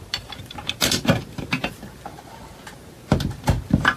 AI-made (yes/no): yes